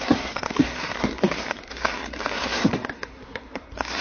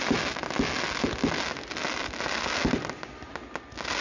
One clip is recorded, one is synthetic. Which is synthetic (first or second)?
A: first